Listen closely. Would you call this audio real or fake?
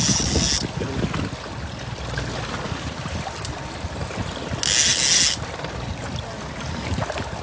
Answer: real